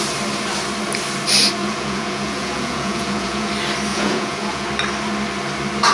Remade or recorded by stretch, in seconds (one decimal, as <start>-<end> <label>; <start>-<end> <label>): 0.0-1.6 recorded; 1.6-3.5 remade; 3.5-3.9 recorded; 3.9-4.7 remade; 4.7-5.9 recorded